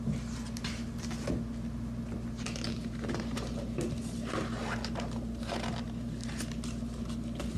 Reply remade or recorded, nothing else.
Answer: recorded